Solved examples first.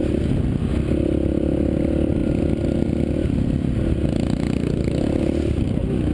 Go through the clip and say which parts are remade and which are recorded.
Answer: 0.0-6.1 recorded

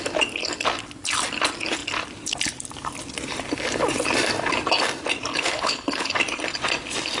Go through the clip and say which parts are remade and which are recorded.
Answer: 0.0-5.3 recorded; 5.3-6.1 remade; 6.1-7.2 recorded

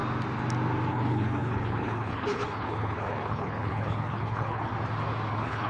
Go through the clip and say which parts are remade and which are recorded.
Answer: 0.0-0.9 recorded; 0.9-4.7 remade; 4.7-5.3 recorded; 5.3-5.7 remade

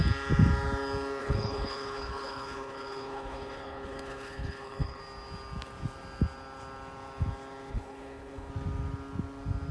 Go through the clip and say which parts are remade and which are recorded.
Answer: 0.0-1.2 recorded; 1.2-5.0 remade; 5.0-7.7 recorded; 7.7-8.5 remade; 8.5-9.7 recorded

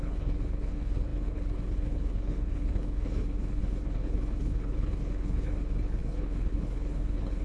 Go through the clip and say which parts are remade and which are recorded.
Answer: 0.0-7.4 remade

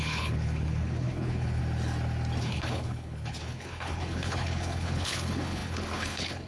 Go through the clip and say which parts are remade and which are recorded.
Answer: 0.0-1.6 remade; 1.6-2.4 recorded; 2.4-6.5 remade

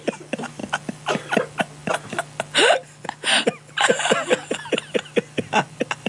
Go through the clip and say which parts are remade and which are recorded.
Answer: 0.0-6.1 recorded

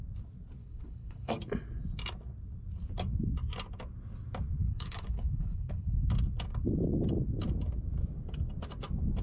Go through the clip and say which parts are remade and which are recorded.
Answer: 0.0-0.6 recorded; 0.6-1.3 remade; 1.3-4.6 recorded; 4.6-6.1 remade; 6.1-9.2 recorded